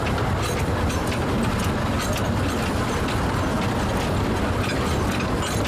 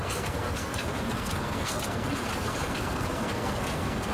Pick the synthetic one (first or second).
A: second